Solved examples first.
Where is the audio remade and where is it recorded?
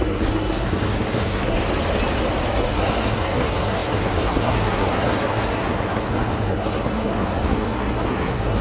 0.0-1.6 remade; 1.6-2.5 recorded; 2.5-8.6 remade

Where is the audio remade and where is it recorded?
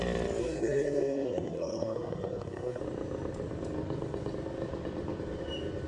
0.0-0.4 recorded; 0.4-2.8 remade; 2.8-5.9 recorded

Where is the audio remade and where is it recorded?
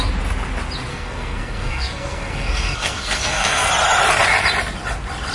0.0-0.9 recorded; 0.9-3.7 remade; 3.7-5.3 recorded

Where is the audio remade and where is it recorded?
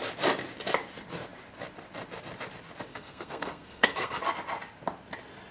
0.0-2.9 recorded; 2.9-4.2 remade; 4.2-5.5 recorded